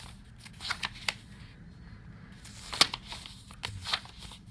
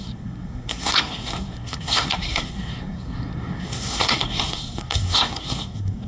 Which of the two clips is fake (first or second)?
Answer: second